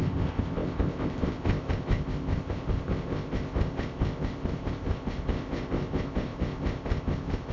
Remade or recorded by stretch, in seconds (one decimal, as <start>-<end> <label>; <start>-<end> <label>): 0.0-7.5 remade